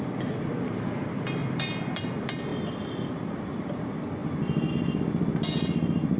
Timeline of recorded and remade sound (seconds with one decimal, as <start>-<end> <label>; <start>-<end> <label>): 0.0-1.4 recorded; 1.4-2.0 remade; 2.0-2.5 recorded; 2.5-3.8 remade; 3.8-6.2 recorded